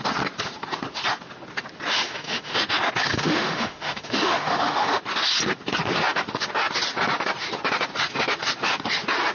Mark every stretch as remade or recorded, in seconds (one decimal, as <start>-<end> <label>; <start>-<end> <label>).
0.0-1.9 recorded; 1.9-2.5 remade; 2.5-3.0 recorded; 3.0-5.0 remade; 5.0-9.3 recorded